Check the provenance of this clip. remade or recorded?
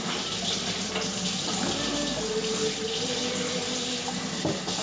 recorded